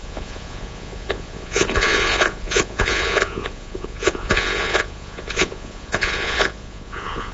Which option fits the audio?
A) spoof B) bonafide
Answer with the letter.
A